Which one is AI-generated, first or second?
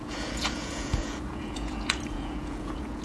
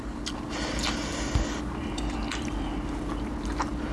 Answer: first